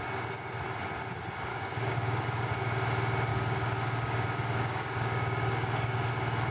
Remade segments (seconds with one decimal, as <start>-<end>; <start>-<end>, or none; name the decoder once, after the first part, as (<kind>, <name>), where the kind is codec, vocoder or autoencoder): 1.5-2.5 (codec, DAC); 3.3-6.1